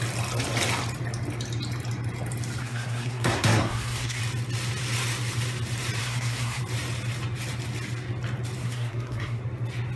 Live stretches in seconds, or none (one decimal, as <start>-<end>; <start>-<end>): 0.0-2.6; 4.2-6.0; 6.6-8.6; 9.4-10.0